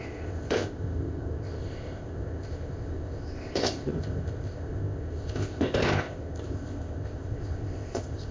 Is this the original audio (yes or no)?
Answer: no